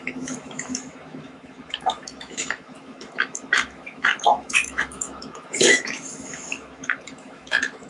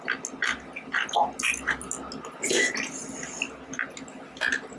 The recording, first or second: second